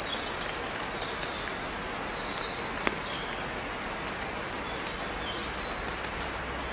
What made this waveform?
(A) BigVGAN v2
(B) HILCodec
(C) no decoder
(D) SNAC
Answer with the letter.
C